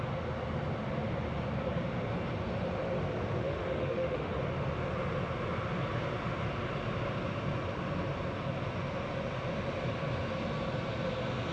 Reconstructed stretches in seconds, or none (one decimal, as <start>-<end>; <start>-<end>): 3.4-4.4